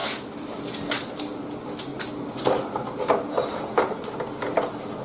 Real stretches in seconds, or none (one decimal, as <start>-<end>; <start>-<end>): 0.6-5.0